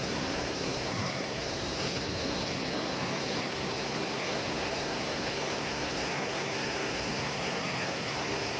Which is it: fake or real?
fake